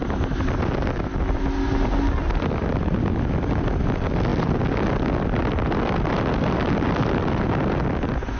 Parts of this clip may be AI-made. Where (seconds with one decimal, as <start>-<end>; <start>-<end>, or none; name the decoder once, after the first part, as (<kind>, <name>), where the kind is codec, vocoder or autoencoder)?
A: none

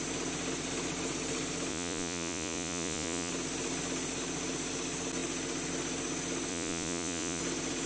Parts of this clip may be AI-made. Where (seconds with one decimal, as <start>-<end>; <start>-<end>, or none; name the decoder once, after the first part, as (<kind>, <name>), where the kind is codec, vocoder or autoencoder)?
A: 1.7-3.3 (vocoder, Vocos); 6.5-7.4

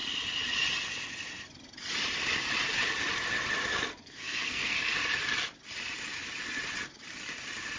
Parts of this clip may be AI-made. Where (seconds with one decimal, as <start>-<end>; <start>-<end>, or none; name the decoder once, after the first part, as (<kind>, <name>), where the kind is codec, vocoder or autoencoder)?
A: 3.9-4.9 (codec, SNAC)

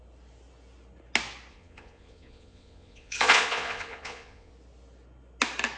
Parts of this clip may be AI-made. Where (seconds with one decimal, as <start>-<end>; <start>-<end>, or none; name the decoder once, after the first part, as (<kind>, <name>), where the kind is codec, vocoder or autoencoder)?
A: 1.5-4.5 (vocoder, Vocos)

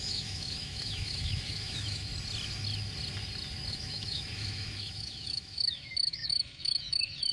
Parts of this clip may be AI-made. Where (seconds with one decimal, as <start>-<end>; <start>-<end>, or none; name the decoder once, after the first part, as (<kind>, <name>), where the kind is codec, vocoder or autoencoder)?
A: 0.0-2.1 (autoencoder, DAC-VAE); 3.7-7.3

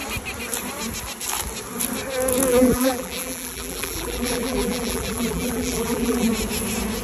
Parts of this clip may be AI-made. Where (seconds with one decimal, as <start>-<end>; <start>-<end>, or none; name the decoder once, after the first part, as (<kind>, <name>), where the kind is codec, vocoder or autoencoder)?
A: 2.5-6.3 (vocoder, BigVGAN v2)

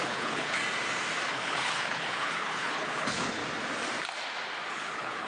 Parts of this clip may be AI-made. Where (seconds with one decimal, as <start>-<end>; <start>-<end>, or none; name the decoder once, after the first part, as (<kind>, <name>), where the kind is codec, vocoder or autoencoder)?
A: 0.0-0.6 (codec, HILCodec); 1.3-3.4; 4.7-5.3

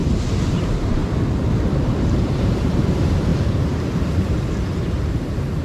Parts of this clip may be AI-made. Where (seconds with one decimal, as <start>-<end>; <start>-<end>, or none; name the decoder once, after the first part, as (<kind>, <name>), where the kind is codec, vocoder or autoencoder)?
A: 0.6-1.0 (vocoder, BigVGAN v2); 1.9-3.3; 5.1-5.6